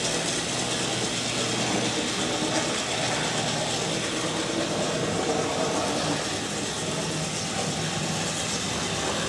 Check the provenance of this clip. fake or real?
real